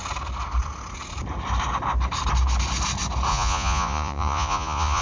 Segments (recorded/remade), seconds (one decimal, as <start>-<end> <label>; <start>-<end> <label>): 0.0-3.3 recorded; 3.3-5.0 remade